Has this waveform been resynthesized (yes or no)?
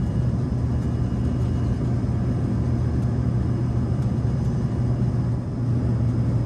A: no